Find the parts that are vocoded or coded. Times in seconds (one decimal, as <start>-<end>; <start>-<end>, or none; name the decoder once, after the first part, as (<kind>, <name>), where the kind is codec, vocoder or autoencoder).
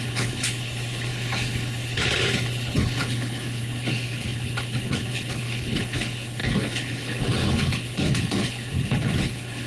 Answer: 0.0-9.7 (codec, HILCodec)